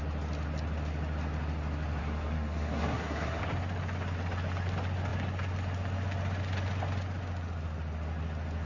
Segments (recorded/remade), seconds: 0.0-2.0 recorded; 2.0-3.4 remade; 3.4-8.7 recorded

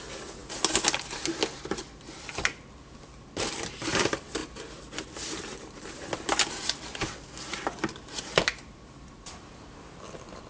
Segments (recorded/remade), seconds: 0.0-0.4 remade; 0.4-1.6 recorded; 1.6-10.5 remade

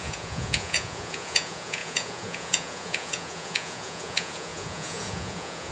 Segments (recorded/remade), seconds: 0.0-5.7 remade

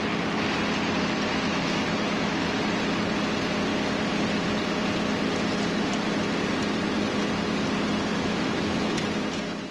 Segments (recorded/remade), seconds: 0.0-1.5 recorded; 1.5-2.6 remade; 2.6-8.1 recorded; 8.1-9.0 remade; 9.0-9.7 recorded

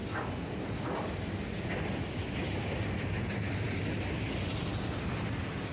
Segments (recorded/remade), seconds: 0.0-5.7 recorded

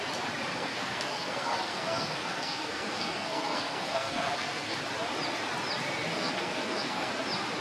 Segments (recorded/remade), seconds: 0.0-0.5 recorded; 0.5-4.8 remade; 4.8-6.1 recorded; 6.1-7.1 remade; 7.1-7.6 recorded

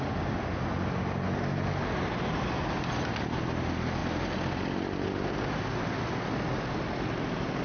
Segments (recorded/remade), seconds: 0.0-7.6 recorded

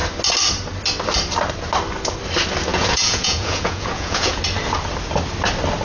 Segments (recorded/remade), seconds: 0.0-2.7 recorded; 2.7-4.4 remade; 4.4-5.8 recorded